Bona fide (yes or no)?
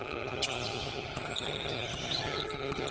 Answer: no